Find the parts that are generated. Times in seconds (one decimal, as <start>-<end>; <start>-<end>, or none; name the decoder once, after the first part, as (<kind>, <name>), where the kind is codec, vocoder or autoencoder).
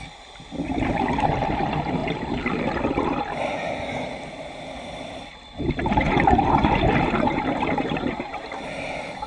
none